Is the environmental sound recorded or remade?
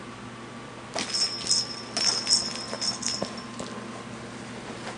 recorded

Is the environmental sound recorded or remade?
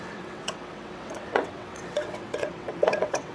remade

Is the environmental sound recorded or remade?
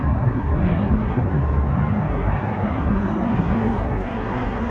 remade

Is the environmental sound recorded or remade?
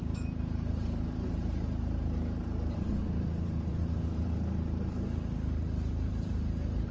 remade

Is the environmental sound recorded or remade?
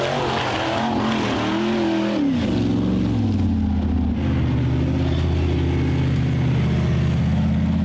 recorded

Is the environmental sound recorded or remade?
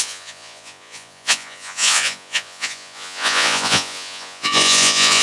remade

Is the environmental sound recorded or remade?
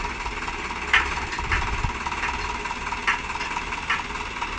recorded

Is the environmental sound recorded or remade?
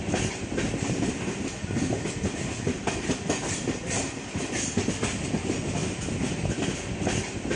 recorded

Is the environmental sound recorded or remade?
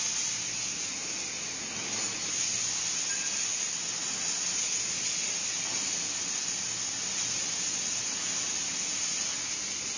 recorded